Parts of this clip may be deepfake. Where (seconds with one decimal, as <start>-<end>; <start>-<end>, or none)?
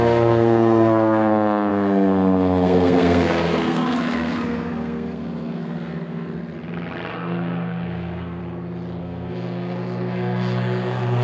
0.0-6.4; 7.1-8.4; 9.0-11.2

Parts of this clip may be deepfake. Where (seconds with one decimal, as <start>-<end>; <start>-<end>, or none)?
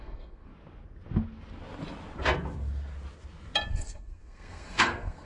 0.0-0.5; 3.7-5.3